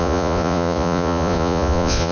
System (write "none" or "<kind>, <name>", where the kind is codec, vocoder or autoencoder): vocoder, Vocos